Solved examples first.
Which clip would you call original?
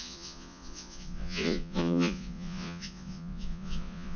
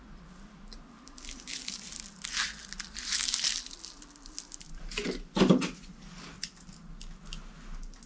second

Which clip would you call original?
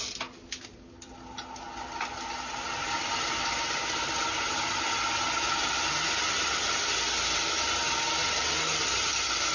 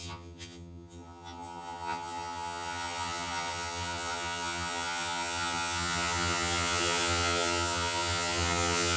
first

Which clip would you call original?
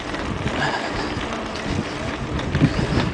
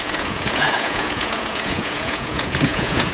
first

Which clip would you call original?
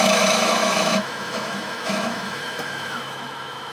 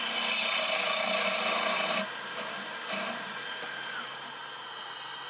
second